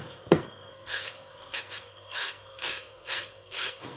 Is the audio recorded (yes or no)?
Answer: no